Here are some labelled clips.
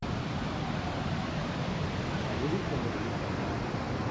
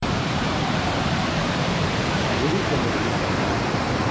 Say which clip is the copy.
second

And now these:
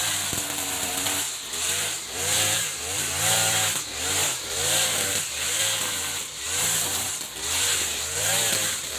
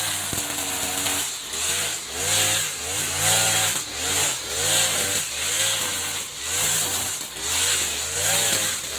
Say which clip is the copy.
first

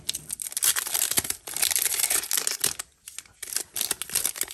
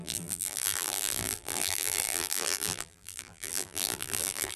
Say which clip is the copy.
second